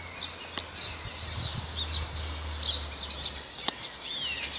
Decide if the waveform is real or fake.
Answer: real